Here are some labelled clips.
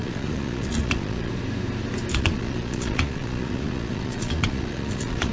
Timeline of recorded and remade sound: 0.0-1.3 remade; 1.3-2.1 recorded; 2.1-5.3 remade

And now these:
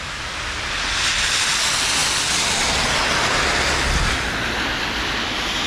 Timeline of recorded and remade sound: 0.0-5.7 recorded

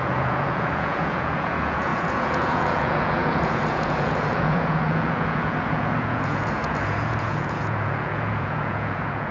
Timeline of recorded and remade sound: 0.0-9.3 remade